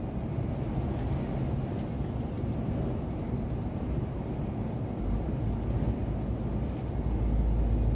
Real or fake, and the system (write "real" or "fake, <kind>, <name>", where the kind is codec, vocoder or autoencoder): real